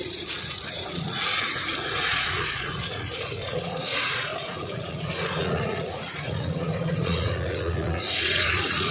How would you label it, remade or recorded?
remade